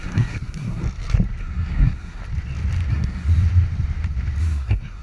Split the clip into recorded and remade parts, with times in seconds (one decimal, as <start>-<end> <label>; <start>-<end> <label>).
0.0-0.8 remade; 0.8-1.4 recorded; 1.4-2.2 remade; 2.2-2.9 recorded; 2.9-3.3 remade; 3.3-4.4 recorded; 4.4-5.0 remade